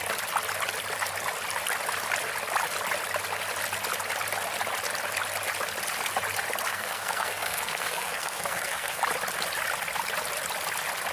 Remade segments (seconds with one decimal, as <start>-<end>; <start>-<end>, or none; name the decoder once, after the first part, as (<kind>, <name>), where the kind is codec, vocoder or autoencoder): 6.7-9.0 (codec, SNAC)